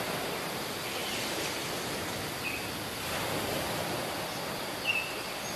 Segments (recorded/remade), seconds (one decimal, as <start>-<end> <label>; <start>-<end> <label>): 0.0-5.6 recorded

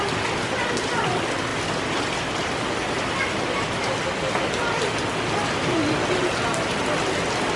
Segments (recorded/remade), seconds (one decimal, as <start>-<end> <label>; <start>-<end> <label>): 0.0-7.6 recorded

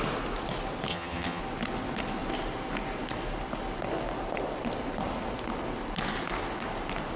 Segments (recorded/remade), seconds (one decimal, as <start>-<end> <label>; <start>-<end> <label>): 0.0-0.9 recorded; 0.9-1.4 remade; 1.4-7.2 recorded

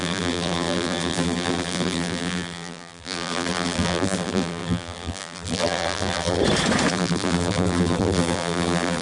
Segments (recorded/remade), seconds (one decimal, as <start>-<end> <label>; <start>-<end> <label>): 0.0-6.4 remade; 6.4-6.9 recorded; 6.9-9.0 remade

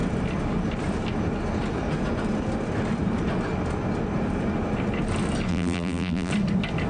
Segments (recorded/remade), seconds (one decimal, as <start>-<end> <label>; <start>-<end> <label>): 0.0-5.5 recorded; 5.5-6.3 remade; 6.3-6.9 recorded

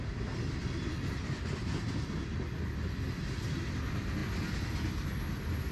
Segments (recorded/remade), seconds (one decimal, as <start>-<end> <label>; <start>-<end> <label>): 0.0-5.7 recorded

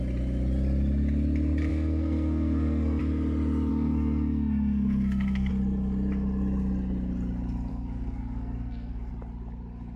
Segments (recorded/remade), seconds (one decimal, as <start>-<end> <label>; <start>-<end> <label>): 0.0-1.7 recorded; 1.7-3.0 remade; 3.0-3.7 recorded; 3.7-5.5 remade; 5.5-7.7 recorded; 7.7-9.1 remade; 9.1-10.0 recorded

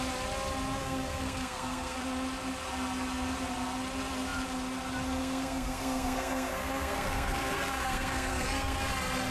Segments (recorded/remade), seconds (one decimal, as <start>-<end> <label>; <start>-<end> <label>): 0.0-0.8 recorded; 0.8-2.0 remade; 2.0-5.2 recorded; 5.2-8.9 remade; 8.9-9.3 recorded